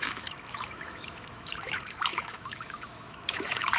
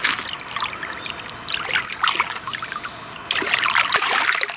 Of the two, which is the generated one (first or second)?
first